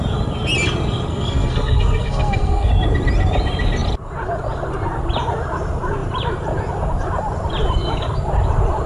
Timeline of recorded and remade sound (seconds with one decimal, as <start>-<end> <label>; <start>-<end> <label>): 0.0-1.1 recorded; 1.1-2.7 remade; 2.7-8.9 recorded